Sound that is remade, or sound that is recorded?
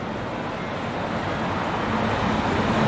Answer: recorded